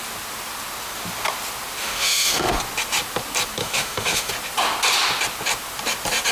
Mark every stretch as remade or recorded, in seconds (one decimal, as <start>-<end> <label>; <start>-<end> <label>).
0.0-1.8 recorded; 1.8-2.6 remade; 2.6-3.6 recorded; 3.6-4.3 remade; 4.3-6.3 recorded